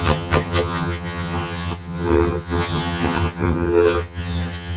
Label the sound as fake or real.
fake